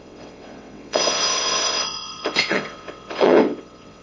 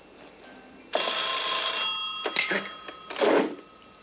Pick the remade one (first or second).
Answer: first